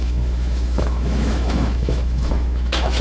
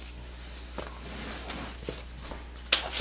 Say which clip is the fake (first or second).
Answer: first